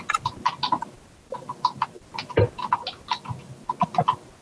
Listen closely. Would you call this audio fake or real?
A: real